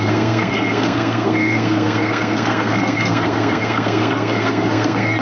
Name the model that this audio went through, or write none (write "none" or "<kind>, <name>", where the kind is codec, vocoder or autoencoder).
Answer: codec, SNAC